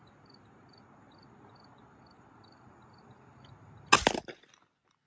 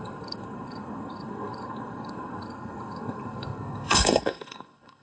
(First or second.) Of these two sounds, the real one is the first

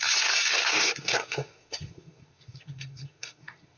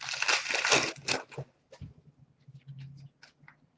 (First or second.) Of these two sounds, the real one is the second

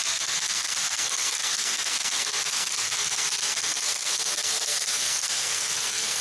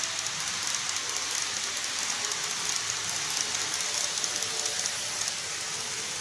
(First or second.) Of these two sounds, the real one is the second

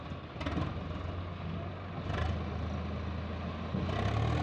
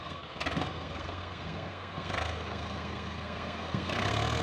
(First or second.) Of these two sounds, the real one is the first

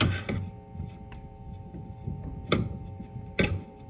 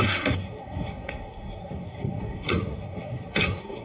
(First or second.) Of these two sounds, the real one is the first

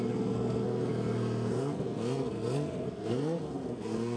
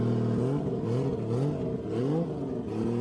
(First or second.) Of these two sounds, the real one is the second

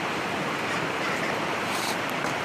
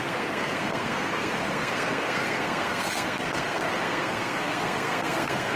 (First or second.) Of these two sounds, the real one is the first